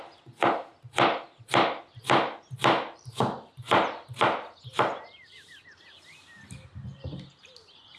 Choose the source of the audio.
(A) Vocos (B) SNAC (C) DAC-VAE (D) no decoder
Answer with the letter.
D